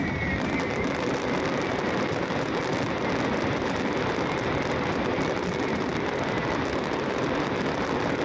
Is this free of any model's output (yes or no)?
yes